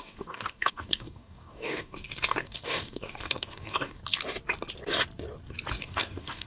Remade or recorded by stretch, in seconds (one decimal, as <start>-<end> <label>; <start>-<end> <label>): 0.0-4.0 remade; 4.0-5.7 recorded; 5.7-6.5 remade